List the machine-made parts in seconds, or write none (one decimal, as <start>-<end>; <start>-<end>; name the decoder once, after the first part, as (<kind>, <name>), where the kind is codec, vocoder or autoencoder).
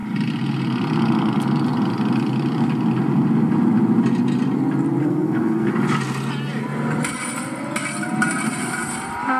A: 5.0-5.7 (codec, SNAC)